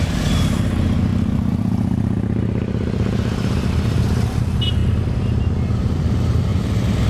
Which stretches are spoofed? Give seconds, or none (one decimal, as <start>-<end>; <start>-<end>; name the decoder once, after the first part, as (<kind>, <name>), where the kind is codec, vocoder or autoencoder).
none